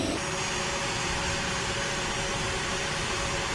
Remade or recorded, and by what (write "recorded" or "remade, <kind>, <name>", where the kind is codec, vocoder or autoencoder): recorded